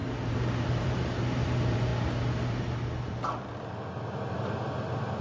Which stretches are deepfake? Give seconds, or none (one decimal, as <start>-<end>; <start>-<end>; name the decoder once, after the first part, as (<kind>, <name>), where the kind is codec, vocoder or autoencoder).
0.0-1.9 (vocoder, BigVGAN v2)